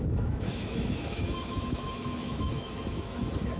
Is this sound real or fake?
fake